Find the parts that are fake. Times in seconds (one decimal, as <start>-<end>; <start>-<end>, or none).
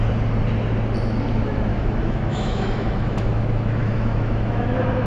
1.7-5.1